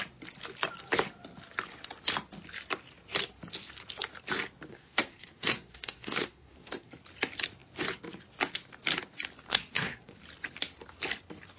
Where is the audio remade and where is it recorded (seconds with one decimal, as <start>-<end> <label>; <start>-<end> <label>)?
0.0-4.7 recorded; 4.7-6.9 remade; 6.9-9.5 recorded; 9.5-10.2 remade; 10.2-11.6 recorded